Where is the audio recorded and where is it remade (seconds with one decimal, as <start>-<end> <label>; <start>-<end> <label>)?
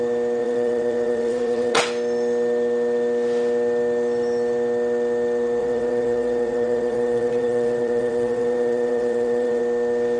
0.0-0.4 recorded; 0.4-1.8 remade; 1.8-5.6 recorded; 5.6-9.6 remade; 9.6-10.2 recorded